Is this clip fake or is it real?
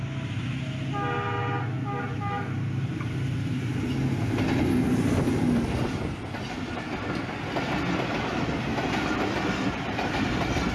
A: real